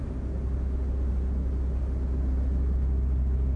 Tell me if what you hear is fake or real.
real